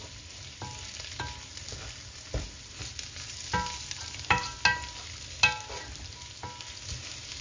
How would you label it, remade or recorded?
recorded